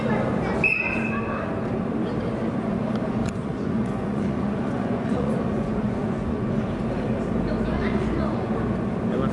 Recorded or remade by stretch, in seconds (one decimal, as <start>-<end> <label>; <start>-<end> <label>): 0.0-3.2 recorded; 3.2-6.6 remade; 6.6-7.7 recorded; 7.7-8.5 remade; 8.5-9.3 recorded

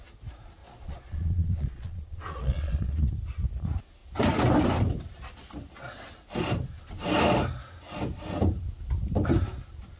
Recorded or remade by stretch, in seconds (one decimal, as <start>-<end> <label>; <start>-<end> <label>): 0.0-0.6 recorded; 0.6-3.1 remade; 3.1-10.0 recorded

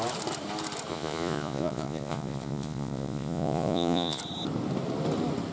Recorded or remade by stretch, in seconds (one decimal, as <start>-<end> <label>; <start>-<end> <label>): 0.0-0.9 recorded; 0.9-4.2 remade; 4.2-5.5 recorded

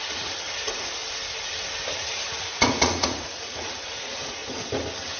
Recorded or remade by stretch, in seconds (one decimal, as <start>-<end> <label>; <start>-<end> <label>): 0.0-1.0 remade; 1.0-1.9 recorded; 1.9-4.4 remade; 4.4-5.2 recorded

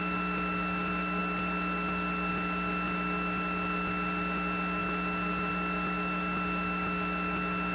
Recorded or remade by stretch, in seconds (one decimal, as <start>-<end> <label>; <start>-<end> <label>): 0.0-7.7 recorded

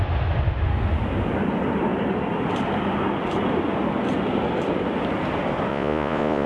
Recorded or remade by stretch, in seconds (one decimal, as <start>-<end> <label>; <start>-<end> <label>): 0.0-5.7 recorded; 5.7-6.5 remade

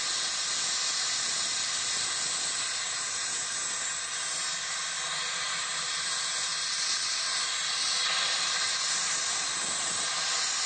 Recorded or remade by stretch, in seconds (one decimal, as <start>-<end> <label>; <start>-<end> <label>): 0.0-10.7 recorded

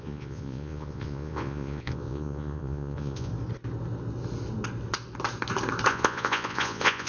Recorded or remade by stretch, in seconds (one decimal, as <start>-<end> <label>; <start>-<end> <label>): 0.0-3.3 remade; 3.3-5.9 recorded; 5.9-7.1 remade